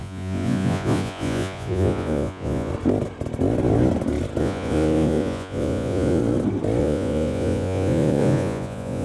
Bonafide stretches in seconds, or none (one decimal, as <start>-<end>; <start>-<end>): 2.7-4.4; 6.2-6.8